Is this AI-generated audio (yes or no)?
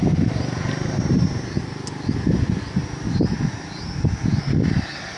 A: no